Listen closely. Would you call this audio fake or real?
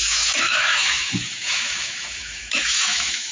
fake